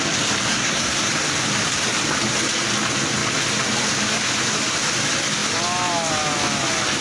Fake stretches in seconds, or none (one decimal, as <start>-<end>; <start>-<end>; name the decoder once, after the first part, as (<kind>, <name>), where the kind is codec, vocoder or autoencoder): 0.5-1.1 (codec, SNAC)

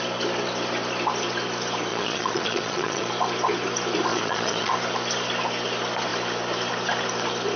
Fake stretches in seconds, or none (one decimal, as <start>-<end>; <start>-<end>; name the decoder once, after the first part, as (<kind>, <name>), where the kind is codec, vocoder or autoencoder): 1.9-3.1 (vocoder, Vocos); 4.1-4.7

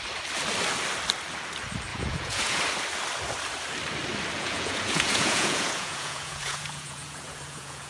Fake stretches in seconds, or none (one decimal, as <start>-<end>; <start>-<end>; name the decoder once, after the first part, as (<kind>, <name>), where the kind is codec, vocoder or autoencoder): 1.9-2.6 (vocoder, Vocos); 4.4-7.9

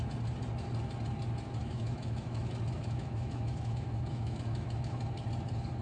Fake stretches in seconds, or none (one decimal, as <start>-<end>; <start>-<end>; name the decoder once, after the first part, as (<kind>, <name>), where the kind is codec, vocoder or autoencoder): 1.6-5.0 (autoencoder, DAC-VAE)